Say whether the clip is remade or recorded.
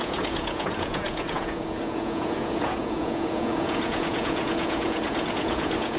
remade